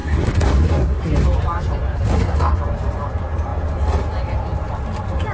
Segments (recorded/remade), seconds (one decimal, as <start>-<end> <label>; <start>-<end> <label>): 0.0-1.0 remade; 1.0-2.1 recorded; 2.1-2.6 remade; 2.6-5.3 recorded